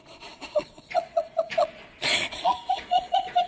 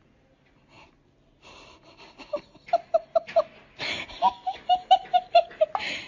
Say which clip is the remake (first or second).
first